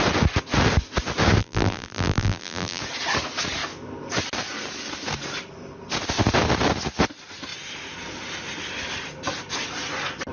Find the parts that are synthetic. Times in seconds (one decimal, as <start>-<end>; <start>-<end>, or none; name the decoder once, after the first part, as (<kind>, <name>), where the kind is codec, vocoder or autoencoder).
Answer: 1.4-2.8 (vocoder, BigVGAN v2)